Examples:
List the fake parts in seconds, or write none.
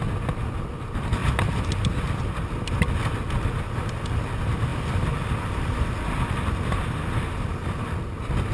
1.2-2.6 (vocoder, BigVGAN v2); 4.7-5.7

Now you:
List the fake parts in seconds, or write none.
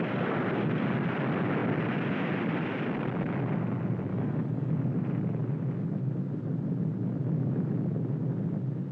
4.1-4.7 (codec, DAC)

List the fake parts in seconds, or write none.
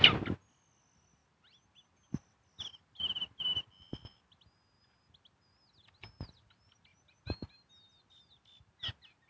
none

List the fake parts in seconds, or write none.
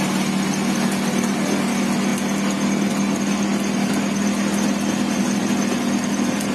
none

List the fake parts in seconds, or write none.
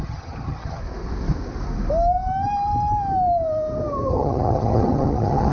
0.0-0.8 (vocoder, HiFi-GAN); 4.1-5.5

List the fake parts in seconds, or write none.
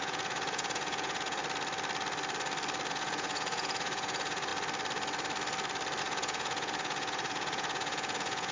0.0-1.4 (vocoder, Vocos); 2.9-4.5; 6.0-8.5